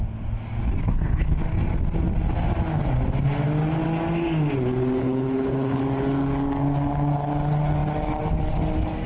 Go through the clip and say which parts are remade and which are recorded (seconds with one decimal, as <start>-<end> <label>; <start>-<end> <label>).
0.0-0.8 recorded; 0.8-1.4 remade; 1.4-5.0 recorded; 5.0-5.8 remade; 5.8-9.1 recorded